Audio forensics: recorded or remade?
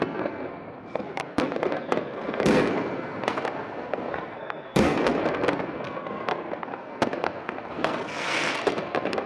remade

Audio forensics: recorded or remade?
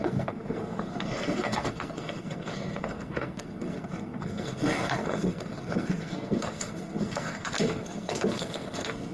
remade